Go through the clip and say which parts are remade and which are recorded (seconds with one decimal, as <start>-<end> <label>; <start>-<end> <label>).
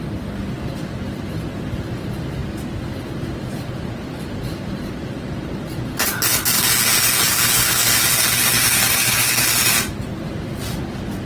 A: 0.0-11.3 recorded